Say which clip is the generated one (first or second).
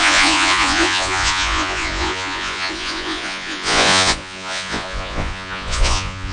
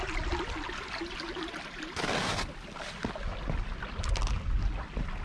first